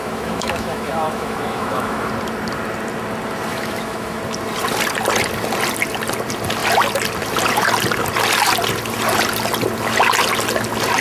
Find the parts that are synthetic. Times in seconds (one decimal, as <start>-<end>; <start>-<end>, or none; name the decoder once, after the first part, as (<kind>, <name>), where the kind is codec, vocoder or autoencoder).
0.0-2.1 (autoencoder, DAC-VAE); 3.5-4.2